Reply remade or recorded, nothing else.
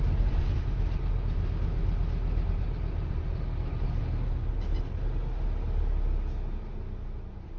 recorded